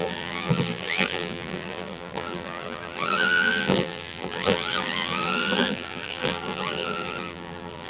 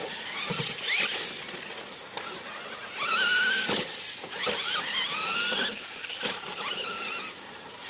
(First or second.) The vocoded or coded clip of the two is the first